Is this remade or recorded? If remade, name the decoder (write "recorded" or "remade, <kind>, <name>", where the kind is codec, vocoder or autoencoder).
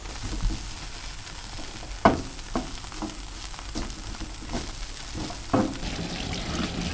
recorded